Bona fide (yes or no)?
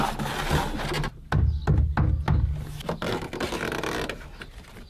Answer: yes